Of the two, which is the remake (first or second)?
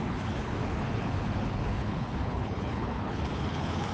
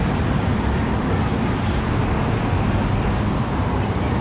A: first